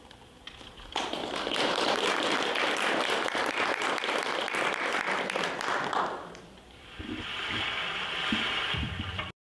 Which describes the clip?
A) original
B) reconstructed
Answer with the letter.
B